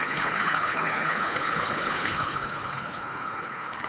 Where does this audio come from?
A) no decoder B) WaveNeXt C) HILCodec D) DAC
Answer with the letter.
C